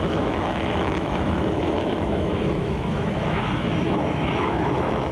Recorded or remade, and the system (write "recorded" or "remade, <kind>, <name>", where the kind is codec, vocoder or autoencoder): remade, autoencoder, DAC-VAE